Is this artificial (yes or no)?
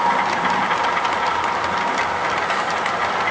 no